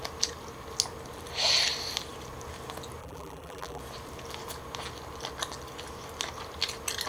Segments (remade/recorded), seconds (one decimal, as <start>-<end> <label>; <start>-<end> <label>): 0.0-3.0 recorded; 3.0-3.8 remade; 3.8-7.1 recorded